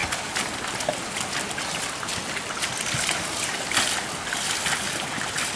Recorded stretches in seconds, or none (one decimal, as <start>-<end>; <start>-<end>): 0.0-5.6